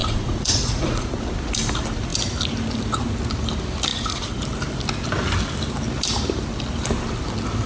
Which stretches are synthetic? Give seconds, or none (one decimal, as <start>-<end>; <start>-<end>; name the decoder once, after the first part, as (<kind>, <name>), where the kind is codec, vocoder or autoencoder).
0.0-1.1 (vocoder, Vocos); 3.9-4.4